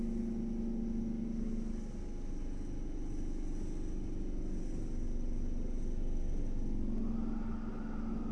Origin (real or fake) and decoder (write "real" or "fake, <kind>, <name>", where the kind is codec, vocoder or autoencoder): real